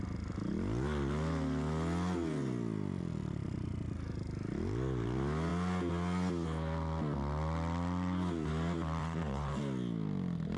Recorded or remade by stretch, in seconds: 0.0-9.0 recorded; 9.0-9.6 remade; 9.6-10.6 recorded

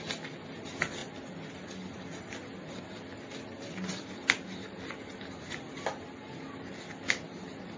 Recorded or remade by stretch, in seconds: 0.0-7.8 recorded